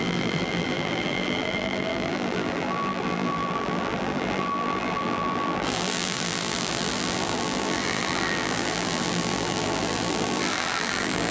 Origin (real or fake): fake